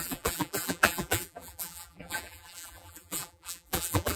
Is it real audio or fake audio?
fake